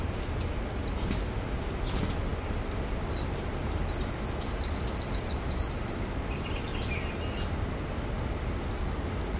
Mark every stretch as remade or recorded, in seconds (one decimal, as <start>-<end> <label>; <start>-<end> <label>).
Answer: 0.0-9.4 recorded